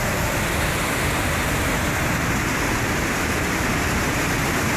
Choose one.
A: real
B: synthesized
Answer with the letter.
A